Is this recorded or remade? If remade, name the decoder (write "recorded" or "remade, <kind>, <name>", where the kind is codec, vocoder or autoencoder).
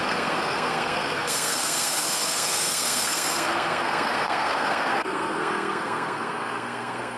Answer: remade, codec, SNAC